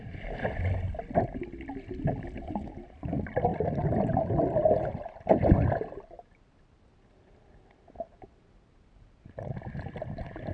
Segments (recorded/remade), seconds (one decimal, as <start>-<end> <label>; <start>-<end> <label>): 0.0-10.5 recorded